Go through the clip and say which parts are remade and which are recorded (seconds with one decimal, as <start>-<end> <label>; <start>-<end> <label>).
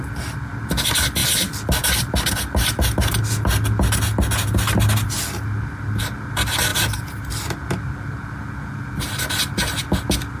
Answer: 0.0-10.4 recorded